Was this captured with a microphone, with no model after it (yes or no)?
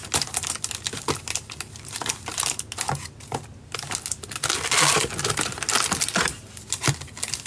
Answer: yes